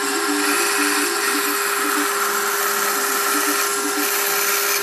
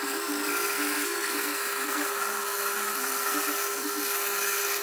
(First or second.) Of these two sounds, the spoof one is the second